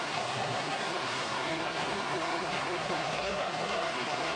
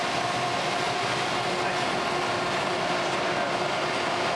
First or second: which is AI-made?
first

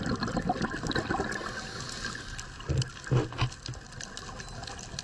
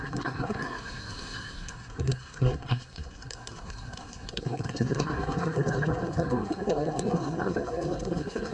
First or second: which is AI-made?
second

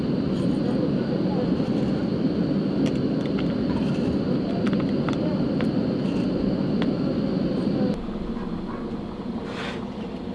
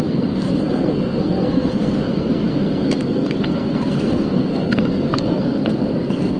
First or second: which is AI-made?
second